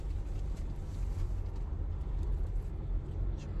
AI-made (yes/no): no